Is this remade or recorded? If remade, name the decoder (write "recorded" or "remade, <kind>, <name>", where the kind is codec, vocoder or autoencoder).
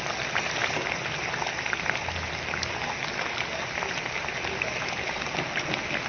recorded